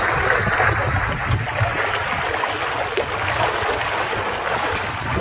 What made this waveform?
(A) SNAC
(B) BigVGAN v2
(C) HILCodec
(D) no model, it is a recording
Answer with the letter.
D